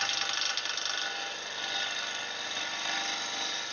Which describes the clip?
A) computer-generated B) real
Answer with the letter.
B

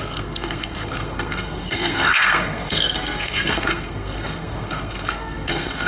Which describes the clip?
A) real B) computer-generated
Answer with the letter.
B